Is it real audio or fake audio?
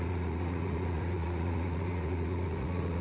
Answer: fake